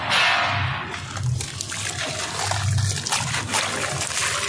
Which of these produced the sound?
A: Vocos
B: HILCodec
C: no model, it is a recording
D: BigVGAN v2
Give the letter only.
C